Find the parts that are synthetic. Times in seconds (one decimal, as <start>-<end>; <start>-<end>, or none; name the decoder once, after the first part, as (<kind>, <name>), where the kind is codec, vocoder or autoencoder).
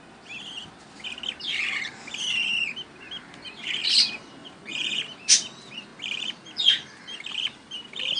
4.4-5.0 (vocoder, Vocos)